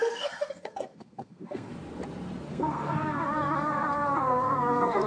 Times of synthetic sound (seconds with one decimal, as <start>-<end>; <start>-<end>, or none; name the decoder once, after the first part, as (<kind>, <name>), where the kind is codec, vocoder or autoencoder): 0.0-1.7 (codec, SNAC); 2.5-5.1